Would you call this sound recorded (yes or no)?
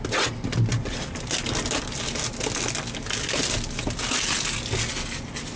yes